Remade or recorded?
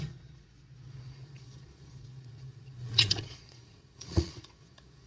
remade